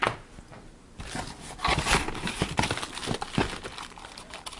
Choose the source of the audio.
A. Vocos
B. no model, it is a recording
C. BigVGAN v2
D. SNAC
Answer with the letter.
B